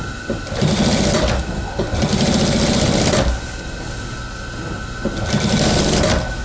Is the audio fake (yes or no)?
no